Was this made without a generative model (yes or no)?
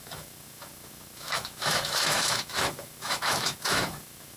no